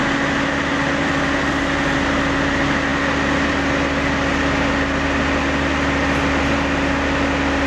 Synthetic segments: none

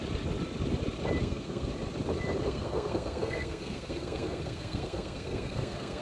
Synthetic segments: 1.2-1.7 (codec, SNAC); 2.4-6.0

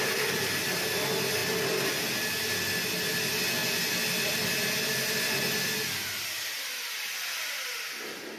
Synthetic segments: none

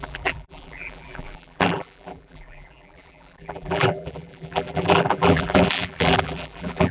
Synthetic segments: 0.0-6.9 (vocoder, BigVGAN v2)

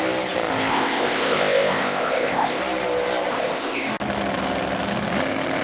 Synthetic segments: 0.7-2.6 (codec, ZipCodec); 3.3-3.9

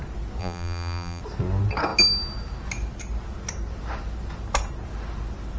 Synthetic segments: 0.4-1.2 (vocoder, BigVGAN v2)